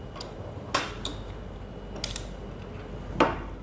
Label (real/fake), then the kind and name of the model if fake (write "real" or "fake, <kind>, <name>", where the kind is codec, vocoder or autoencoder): real